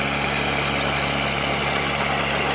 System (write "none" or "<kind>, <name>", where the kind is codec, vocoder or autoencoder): none